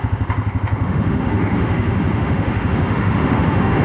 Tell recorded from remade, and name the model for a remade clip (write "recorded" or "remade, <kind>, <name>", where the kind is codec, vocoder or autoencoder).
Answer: remade, autoencoder, DAC-VAE